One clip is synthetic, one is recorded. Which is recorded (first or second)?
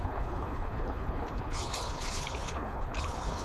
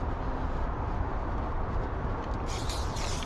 second